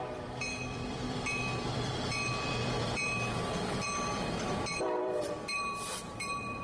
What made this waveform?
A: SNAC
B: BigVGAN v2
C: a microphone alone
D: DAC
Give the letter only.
B